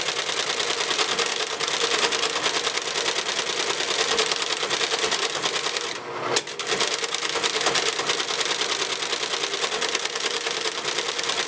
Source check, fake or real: real